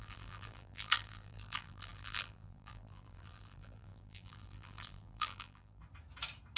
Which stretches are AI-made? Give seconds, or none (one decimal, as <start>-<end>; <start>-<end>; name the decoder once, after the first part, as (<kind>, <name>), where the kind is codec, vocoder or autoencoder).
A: 0.0-5.8 (vocoder, BigVGAN v2)